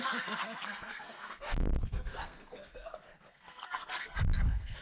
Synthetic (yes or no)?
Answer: yes